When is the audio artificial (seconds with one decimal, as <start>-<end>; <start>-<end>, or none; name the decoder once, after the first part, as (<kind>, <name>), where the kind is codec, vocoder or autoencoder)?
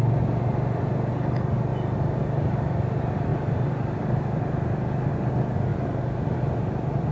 3.3-5.3 (vocoder, BigVGAN v2); 5.7-7.1